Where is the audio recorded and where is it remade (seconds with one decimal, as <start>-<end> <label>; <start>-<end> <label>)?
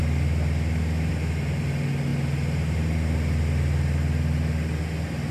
0.0-5.3 recorded